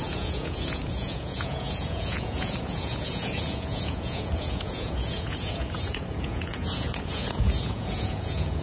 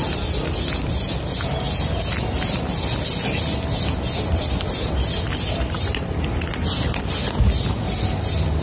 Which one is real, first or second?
second